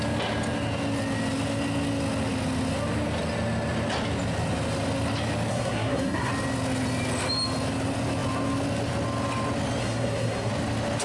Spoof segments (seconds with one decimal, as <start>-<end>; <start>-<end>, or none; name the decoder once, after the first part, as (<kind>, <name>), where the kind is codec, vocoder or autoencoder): 5.5-6.3 (codec, SNAC); 9.8-10.5